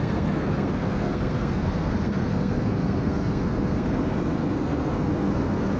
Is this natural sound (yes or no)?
no